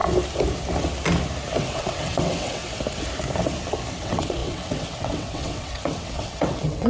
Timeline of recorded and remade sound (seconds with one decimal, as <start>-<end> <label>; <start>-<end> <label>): 0.0-1.6 recorded; 1.6-2.6 remade; 2.6-3.9 recorded; 3.9-6.9 remade